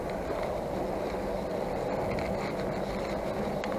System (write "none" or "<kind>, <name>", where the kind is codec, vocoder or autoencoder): none